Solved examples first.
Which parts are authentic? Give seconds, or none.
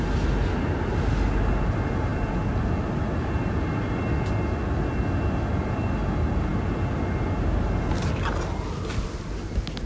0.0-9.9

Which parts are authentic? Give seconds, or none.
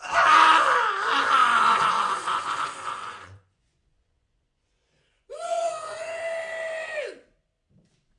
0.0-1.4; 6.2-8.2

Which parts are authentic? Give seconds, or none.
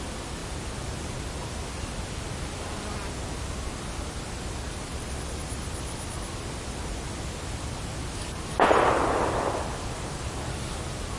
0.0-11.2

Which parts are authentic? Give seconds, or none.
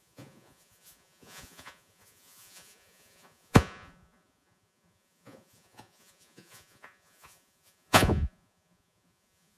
none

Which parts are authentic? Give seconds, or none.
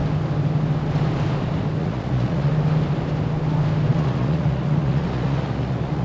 0.0-1.8; 2.5-3.9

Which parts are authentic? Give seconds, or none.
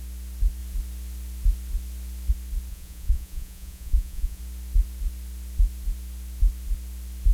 0.0-2.7; 4.4-7.3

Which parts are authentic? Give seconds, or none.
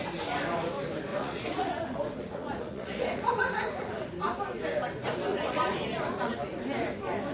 0.0-1.1; 4.1-5.3; 6.6-7.3